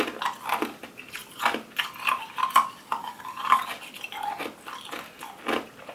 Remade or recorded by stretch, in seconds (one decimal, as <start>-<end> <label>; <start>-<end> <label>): 0.0-3.0 recorded; 3.0-3.6 remade; 3.6-5.9 recorded